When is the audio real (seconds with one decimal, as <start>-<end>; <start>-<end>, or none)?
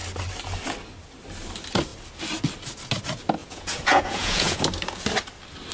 0.0-3.4; 4.6-5.7